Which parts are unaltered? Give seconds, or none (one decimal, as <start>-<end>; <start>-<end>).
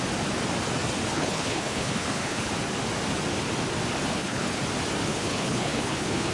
0.0-1.1; 2.5-4.1; 4.6-5.0